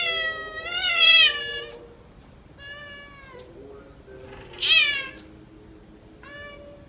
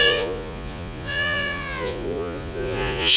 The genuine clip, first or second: first